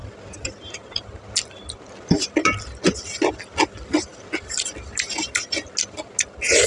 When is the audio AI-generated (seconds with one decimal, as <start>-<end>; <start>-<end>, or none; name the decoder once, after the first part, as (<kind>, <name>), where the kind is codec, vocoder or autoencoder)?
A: none